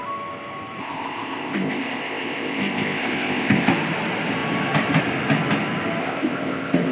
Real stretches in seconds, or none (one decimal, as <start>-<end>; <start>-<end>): 0.0-0.8; 3.7-6.0